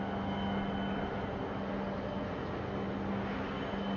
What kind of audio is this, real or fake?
real